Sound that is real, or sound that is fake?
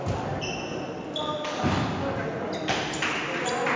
real